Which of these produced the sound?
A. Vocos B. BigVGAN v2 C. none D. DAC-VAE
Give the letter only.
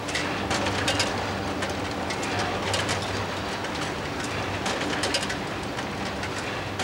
C